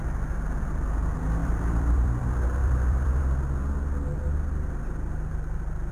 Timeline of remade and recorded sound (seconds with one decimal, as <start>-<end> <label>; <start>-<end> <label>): 0.0-1.4 recorded; 1.4-2.2 remade; 2.2-2.6 recorded; 2.6-3.2 remade; 3.2-5.9 recorded